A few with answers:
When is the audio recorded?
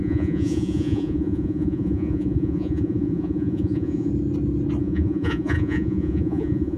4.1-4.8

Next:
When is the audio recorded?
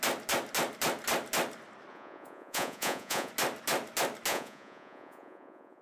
0.0-1.9; 3.3-4.3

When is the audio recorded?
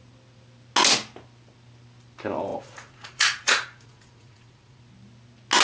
0.0-2.5; 4.8-5.6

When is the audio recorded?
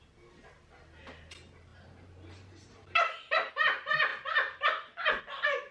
0.0-1.7; 3.5-4.1; 5.2-5.7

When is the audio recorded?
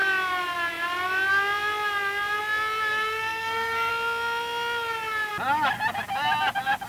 0.0-2.9; 3.9-6.9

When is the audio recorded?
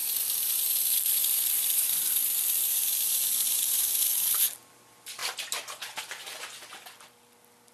3.9-5.2; 6.4-7.7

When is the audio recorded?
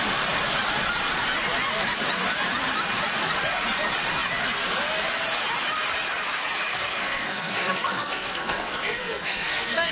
0.0-6.7